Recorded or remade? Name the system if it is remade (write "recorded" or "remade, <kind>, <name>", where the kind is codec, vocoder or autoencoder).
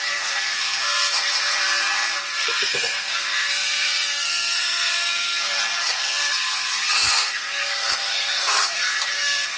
remade, codec, SNAC